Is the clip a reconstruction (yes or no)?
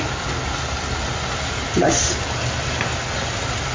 no